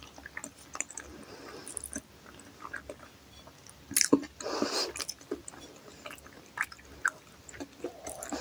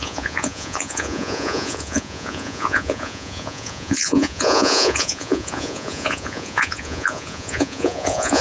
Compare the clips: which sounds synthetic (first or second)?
second